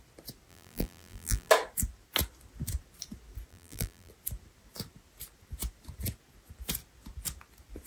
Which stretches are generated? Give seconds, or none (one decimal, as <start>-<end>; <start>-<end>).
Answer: 0.5-1.5; 3.5-4.1